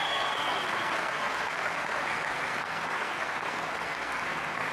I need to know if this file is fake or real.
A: fake